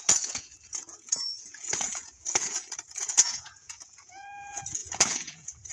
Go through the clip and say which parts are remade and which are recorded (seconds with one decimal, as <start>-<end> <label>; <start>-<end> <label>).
0.0-5.7 remade